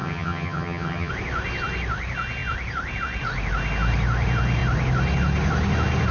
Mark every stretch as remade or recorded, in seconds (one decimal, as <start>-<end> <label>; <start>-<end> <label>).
0.0-1.1 remade; 1.1-6.1 recorded